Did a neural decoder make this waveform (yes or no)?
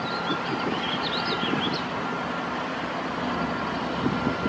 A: no